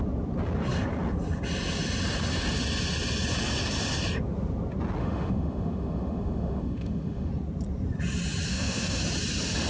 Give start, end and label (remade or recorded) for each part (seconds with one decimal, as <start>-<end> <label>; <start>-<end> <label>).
0.0-5.0 recorded; 5.0-7.3 remade; 7.3-8.5 recorded; 8.5-9.0 remade; 9.0-9.7 recorded